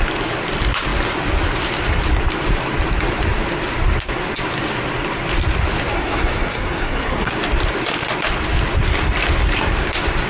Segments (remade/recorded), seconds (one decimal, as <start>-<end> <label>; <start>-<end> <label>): 0.0-5.9 recorded; 5.9-7.3 remade; 7.3-10.3 recorded